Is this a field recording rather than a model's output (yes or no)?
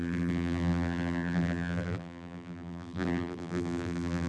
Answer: no